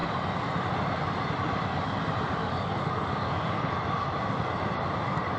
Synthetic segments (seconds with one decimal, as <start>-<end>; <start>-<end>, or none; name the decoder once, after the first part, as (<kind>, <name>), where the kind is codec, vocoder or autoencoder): 2.4-3.7 (codec, DAC)